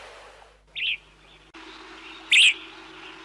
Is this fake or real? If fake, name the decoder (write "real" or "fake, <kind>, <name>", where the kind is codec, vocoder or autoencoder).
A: real